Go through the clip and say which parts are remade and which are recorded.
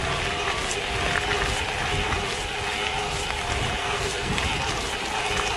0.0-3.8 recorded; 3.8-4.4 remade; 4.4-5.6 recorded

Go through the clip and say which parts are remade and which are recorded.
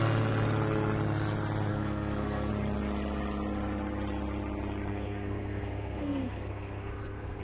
0.0-1.7 recorded; 1.7-2.5 remade; 2.5-4.9 recorded; 4.9-7.4 remade